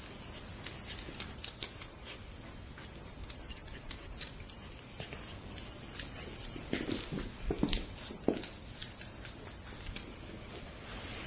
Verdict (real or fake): real